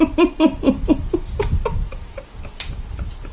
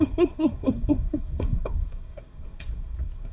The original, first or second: first